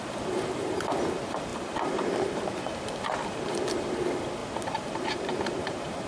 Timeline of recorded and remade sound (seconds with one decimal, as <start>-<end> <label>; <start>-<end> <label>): 0.0-6.1 remade